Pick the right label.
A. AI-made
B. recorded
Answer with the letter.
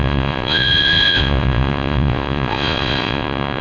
A